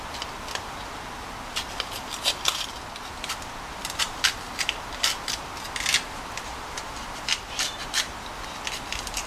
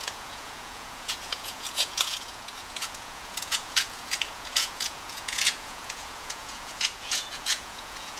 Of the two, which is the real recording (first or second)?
first